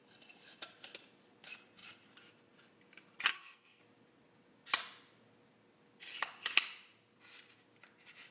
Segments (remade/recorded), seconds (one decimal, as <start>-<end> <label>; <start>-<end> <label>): 0.0-3.3 recorded; 3.3-3.8 remade; 3.8-8.3 recorded